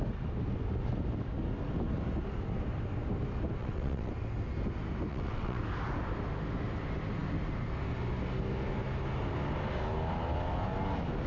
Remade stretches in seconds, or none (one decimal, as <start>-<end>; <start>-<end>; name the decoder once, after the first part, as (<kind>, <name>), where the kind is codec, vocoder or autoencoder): 3.6-4.1 (vocoder, WaveNeXt); 5.1-5.6